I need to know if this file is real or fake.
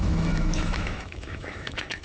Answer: fake